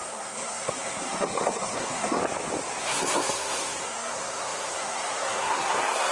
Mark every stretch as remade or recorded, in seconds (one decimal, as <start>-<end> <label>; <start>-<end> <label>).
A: 0.0-2.2 remade; 2.2-2.8 recorded; 2.8-6.1 remade